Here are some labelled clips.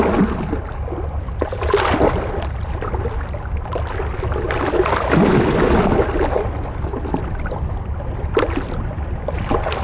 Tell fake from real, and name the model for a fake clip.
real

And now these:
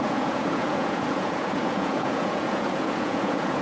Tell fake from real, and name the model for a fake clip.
fake, vocoder, Vocos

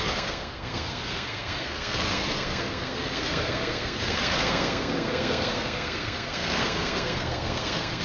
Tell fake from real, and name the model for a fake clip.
fake, codec, SNAC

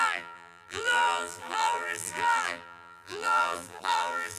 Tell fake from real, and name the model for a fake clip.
fake, vocoder, BigVGAN v2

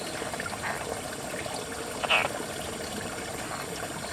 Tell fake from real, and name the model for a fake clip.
real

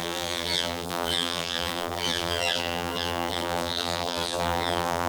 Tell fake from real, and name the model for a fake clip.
fake, vocoder, BigVGAN v2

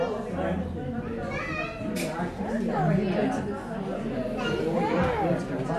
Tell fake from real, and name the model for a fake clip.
real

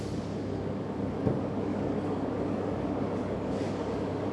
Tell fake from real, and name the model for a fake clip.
fake, codec, DAC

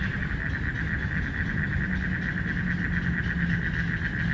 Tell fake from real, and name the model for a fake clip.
real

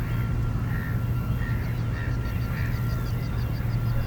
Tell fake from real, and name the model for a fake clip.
real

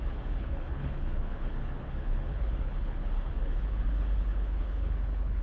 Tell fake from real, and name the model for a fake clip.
fake, codec, HILCodec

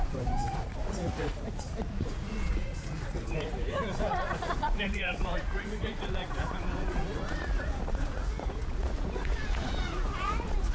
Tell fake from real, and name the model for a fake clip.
fake, vocoder, Vocos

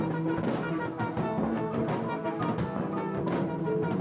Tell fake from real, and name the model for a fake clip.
real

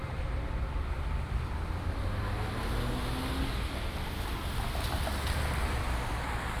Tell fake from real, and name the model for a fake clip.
real